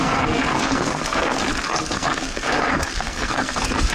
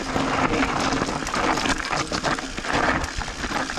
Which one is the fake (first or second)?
first